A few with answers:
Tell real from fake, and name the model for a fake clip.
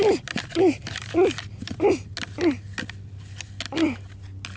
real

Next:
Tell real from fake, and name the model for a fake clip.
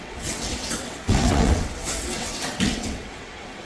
fake, vocoder, WaveNeXt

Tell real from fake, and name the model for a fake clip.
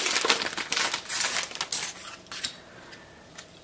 real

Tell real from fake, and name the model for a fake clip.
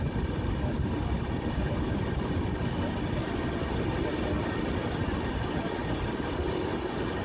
real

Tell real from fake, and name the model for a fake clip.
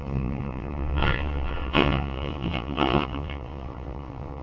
fake, vocoder, WaveNeXt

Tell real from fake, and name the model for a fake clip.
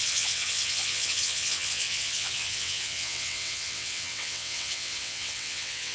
fake, vocoder, WaveNeXt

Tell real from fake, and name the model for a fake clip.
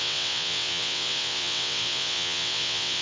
fake, vocoder, WaveNeXt